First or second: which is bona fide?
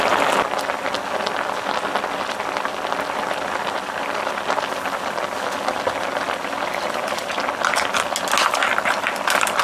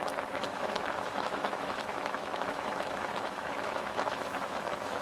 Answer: first